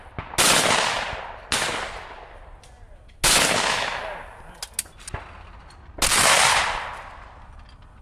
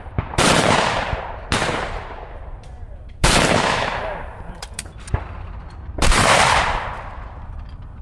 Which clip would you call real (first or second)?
first